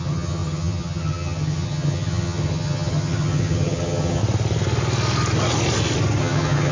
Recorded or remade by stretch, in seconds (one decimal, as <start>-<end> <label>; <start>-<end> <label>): 0.0-4.2 remade; 4.2-6.2 recorded; 6.2-6.7 remade